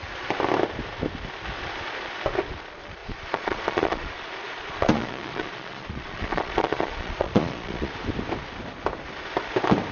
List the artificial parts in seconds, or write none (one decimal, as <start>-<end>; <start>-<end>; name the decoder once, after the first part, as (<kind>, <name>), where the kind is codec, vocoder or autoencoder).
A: 3.0-7.9 (vocoder, Vocos)